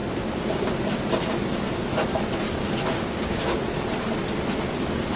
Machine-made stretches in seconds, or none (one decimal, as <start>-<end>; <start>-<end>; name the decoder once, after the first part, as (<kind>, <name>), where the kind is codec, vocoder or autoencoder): 2.9-3.6 (codec, DAC)